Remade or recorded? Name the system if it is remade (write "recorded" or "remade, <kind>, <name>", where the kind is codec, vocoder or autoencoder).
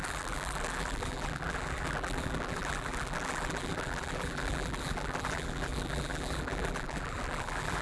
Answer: remade, vocoder, BigVGAN v2